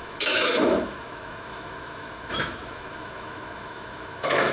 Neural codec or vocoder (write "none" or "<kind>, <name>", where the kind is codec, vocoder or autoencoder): autoencoder, DAC-VAE